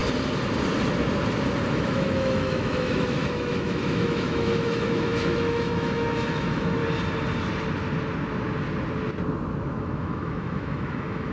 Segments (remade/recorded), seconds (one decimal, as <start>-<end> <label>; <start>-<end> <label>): 0.0-1.7 recorded; 1.7-6.8 remade; 6.8-9.6 recorded; 9.6-11.3 remade